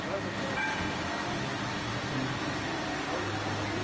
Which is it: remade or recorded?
recorded